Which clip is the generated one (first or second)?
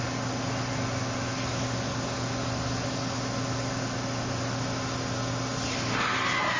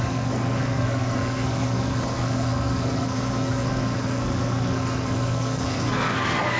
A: second